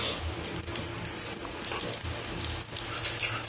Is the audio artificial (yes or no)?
no